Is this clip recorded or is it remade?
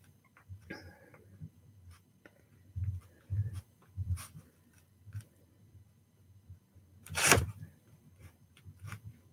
remade